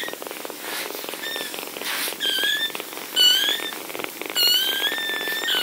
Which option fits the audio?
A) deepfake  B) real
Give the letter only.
B